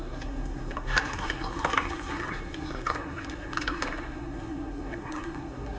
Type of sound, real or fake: fake